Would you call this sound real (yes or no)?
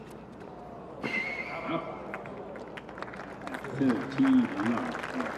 yes